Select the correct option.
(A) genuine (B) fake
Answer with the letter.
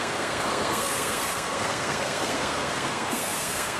B